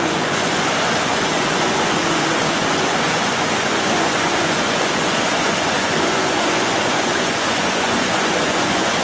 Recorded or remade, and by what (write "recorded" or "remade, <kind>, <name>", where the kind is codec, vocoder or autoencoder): remade, vocoder, Vocos